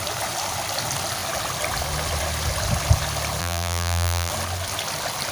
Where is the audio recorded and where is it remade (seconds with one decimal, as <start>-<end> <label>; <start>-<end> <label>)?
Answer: 0.0-3.4 recorded; 3.4-4.3 remade; 4.3-5.3 recorded